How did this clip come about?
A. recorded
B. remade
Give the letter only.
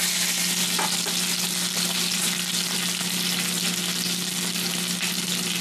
A